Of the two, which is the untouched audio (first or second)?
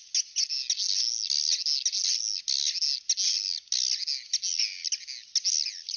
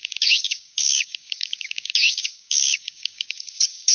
first